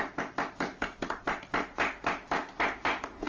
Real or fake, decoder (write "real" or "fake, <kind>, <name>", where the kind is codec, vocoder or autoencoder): real